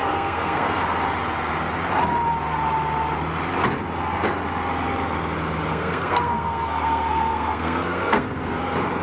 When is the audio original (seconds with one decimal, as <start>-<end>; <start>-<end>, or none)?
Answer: 0.8-5.7; 8.6-9.0

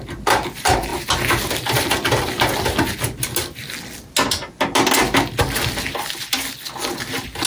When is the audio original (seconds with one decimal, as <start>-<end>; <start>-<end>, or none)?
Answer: 0.0-7.5

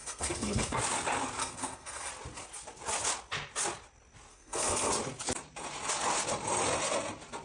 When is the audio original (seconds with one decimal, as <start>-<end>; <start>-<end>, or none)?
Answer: 0.8-1.4; 2.1-4.3; 4.9-7.4

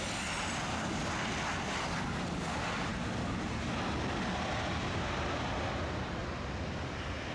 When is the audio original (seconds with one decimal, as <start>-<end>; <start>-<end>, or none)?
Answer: 0.0-7.3

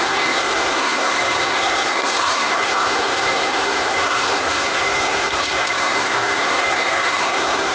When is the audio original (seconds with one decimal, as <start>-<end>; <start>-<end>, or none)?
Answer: none

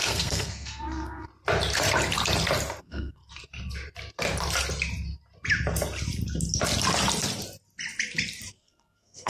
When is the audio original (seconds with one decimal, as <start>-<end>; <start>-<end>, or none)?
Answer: 1.3-2.8; 3.2-8.5

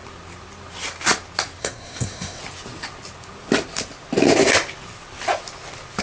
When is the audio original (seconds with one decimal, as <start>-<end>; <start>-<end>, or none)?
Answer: 0.0-1.6; 2.4-6.0

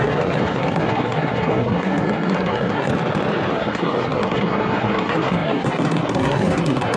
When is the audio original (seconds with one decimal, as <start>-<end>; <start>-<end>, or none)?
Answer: 2.9-3.5